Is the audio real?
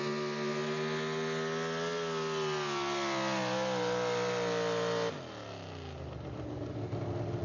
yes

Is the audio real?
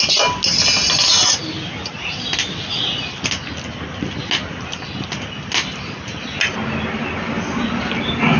yes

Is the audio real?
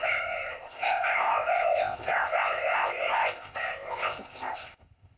no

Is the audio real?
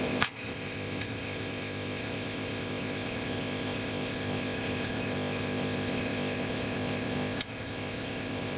no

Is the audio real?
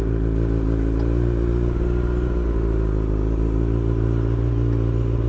yes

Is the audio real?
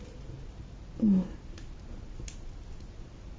yes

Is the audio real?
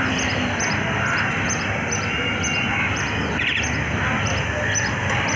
yes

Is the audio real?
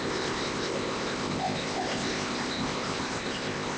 no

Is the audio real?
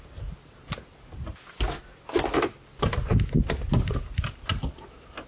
yes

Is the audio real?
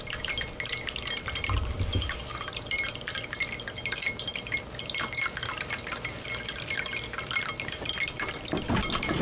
yes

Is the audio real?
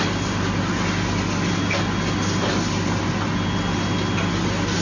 yes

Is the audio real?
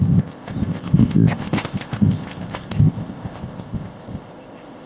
no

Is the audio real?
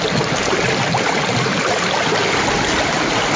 yes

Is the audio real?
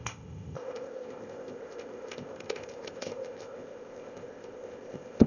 no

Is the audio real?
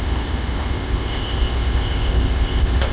no